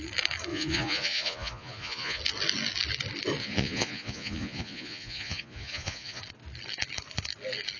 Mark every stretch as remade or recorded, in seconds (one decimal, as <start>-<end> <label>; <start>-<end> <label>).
0.0-0.5 recorded; 0.5-2.2 remade; 2.2-3.4 recorded; 3.4-6.2 remade; 6.2-7.8 recorded